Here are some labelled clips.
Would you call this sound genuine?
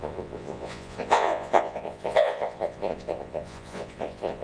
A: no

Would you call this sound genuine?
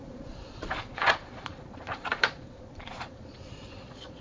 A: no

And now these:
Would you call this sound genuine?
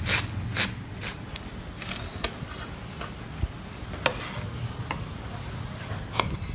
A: yes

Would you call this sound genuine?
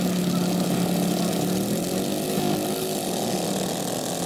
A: yes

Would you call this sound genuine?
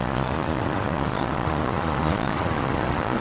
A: no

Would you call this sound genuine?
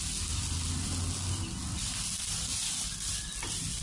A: yes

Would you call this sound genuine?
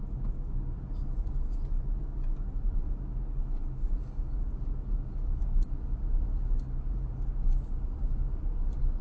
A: yes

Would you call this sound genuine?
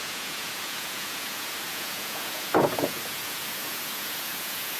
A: no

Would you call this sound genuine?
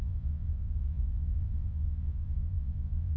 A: no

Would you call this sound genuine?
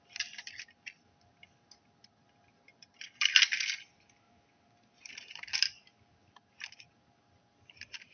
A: yes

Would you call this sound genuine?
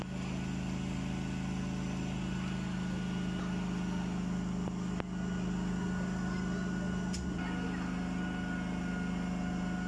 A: yes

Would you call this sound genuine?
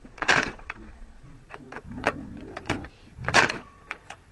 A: no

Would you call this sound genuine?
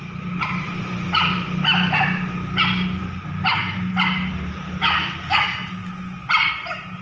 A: yes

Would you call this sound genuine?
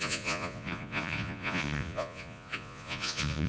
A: no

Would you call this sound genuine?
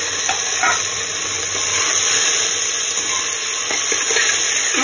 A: yes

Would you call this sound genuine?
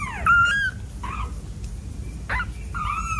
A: yes